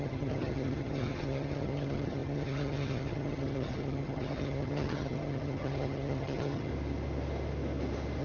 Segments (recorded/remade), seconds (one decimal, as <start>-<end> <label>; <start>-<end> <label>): 0.0-6.7 remade; 6.7-8.2 recorded

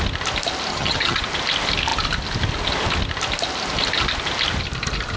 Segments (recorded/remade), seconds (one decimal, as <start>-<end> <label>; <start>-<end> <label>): 0.0-0.7 recorded; 0.7-1.2 remade; 1.2-5.2 recorded

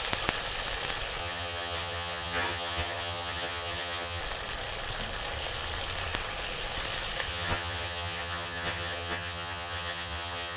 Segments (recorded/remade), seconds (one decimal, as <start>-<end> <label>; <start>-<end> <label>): 0.0-1.2 recorded; 1.2-4.2 remade; 4.2-7.3 recorded; 7.3-10.6 remade

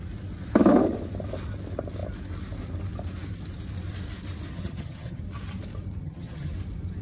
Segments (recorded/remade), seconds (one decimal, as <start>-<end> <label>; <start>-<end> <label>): 0.0-4.5 recorded; 4.5-5.2 remade; 5.2-6.0 recorded; 6.0-6.5 remade; 6.5-7.0 recorded

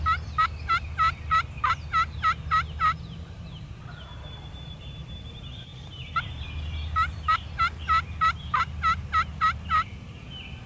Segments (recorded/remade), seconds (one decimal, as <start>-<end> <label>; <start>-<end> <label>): 0.0-10.7 recorded

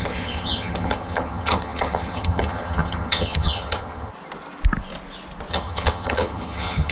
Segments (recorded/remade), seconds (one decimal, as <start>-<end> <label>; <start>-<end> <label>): 0.0-4.1 remade; 4.1-5.5 recorded; 5.5-6.9 remade

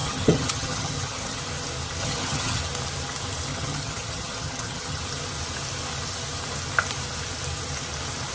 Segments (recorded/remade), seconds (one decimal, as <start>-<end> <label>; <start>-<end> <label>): 0.0-1.4 remade; 1.4-2.0 recorded; 2.0-2.6 remade; 2.6-3.5 recorded; 3.5-5.0 remade; 5.0-8.3 recorded

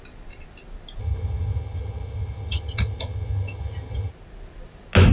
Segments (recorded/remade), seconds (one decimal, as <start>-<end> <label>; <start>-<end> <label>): 0.0-1.0 recorded; 1.0-4.1 remade; 4.1-5.1 recorded